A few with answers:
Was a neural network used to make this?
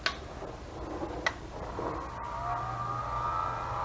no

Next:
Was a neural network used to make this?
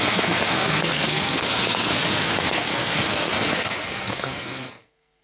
yes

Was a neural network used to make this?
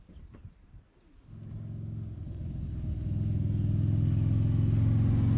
no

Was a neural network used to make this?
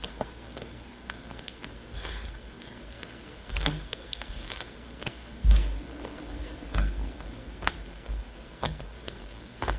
yes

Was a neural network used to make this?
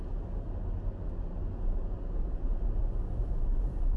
no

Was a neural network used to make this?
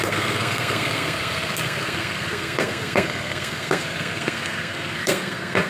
yes